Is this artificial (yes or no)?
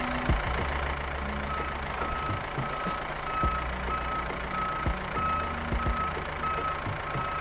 no